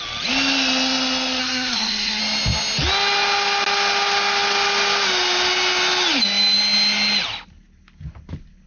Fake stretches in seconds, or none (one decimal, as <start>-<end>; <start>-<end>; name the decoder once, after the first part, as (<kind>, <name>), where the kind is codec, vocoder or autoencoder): 1.4-2.2 (codec, SNAC)